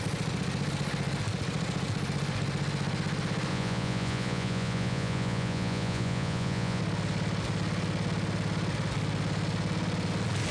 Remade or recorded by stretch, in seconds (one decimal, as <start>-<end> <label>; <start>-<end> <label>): 0.0-3.5 recorded; 3.5-6.8 remade; 6.8-10.5 recorded